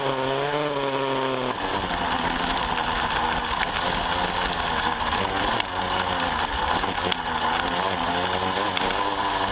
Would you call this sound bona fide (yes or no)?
yes